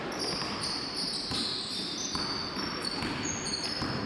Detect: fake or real real